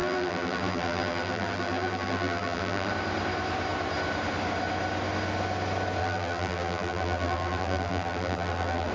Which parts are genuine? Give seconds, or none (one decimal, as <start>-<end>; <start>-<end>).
2.9-6.0